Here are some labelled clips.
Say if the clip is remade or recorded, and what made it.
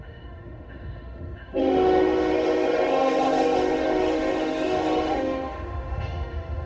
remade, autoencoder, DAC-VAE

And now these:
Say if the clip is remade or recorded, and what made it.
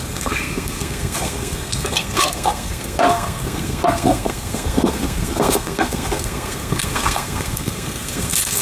remade, codec, SNAC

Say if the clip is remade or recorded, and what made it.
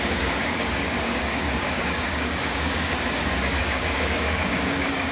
remade, codec, DAC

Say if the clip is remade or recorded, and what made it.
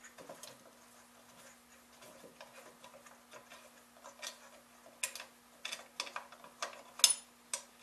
recorded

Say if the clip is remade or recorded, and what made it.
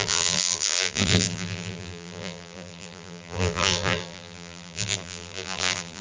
remade, vocoder, BigVGAN v2